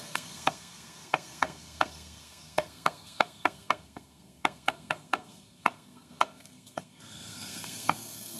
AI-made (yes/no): yes